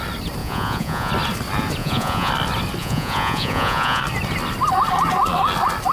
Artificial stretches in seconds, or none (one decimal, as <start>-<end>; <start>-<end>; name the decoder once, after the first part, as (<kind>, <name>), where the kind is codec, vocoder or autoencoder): 0.4-1.1 (vocoder, Vocos); 1.8-2.3; 2.8-4.0